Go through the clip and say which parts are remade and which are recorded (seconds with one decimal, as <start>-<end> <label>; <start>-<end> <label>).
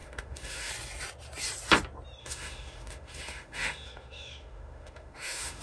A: 0.0-0.7 remade; 0.7-2.2 recorded; 2.2-5.6 remade